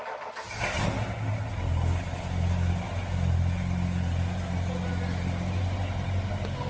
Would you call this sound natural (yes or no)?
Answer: yes